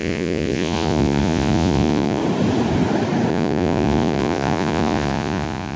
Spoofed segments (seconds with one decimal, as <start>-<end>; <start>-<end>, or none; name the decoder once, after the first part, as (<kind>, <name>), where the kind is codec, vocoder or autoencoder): 0.0-2.2 (vocoder, Vocos); 3.3-5.8